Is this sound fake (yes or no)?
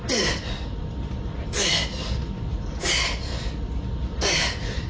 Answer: no